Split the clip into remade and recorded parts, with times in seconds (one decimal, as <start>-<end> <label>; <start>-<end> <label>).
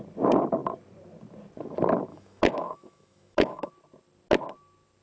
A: 0.0-2.1 recorded; 2.1-3.7 remade; 3.7-5.0 recorded